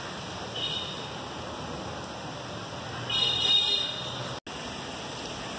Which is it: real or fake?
real